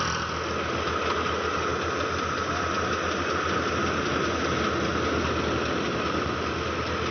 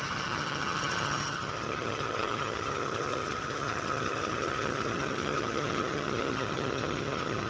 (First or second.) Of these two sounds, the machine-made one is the second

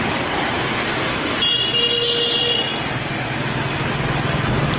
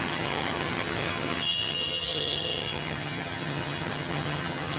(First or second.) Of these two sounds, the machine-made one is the second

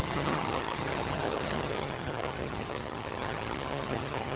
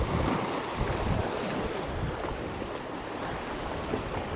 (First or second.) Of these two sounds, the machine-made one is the first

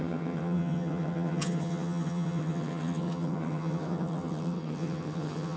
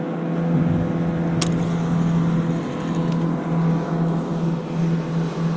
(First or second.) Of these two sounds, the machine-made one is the first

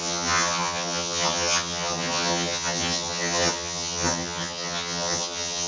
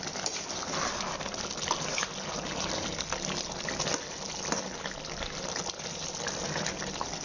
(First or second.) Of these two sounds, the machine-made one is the first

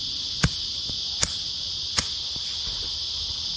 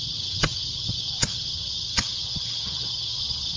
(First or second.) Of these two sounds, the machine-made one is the second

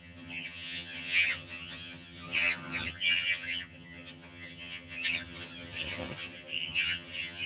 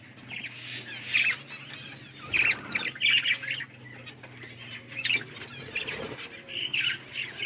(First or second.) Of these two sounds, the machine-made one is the first